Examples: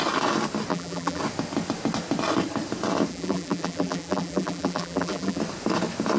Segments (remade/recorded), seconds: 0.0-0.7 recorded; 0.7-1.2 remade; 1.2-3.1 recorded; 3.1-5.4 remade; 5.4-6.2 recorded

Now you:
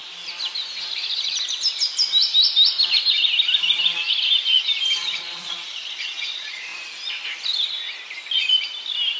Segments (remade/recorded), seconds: 0.0-5.0 recorded; 5.0-6.7 remade; 6.7-9.2 recorded

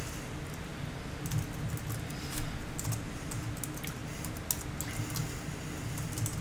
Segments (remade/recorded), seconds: 0.0-6.4 recorded